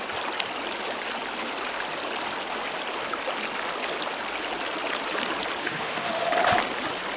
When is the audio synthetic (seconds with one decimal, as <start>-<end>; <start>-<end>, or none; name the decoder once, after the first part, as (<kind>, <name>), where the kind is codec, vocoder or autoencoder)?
5.6-6.3 (autoencoder, DAC-VAE)